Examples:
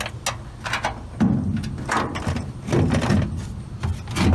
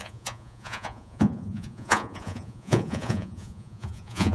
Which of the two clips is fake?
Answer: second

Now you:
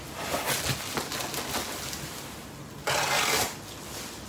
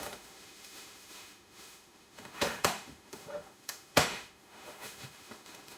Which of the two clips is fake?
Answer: second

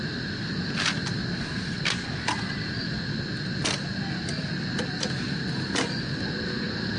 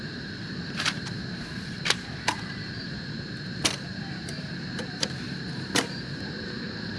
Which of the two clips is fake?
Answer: second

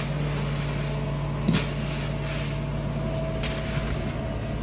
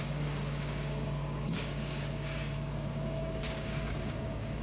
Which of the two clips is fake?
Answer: second